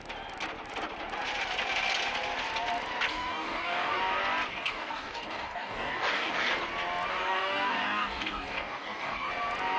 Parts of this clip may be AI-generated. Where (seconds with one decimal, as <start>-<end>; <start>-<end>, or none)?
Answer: 3.1-4.0; 4.5-6.5; 7.1-9.3